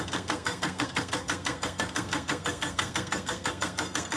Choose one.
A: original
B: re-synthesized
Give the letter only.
B